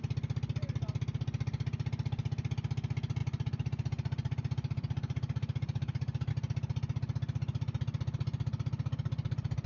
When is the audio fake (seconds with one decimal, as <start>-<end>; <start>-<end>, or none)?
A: 3.2-6.3